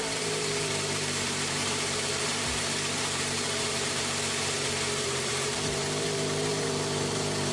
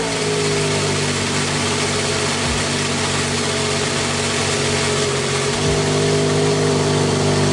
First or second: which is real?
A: second